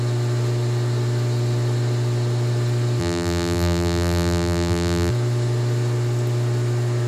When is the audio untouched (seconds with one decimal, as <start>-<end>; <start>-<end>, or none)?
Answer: 0.0-3.0; 5.1-7.1